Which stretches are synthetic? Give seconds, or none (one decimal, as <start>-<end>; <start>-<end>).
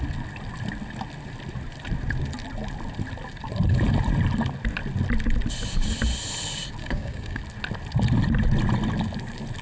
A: 6.8-7.4